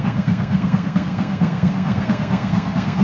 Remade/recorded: remade